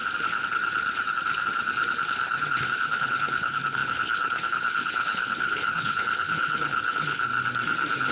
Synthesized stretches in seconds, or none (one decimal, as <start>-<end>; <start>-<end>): 2.6-7.3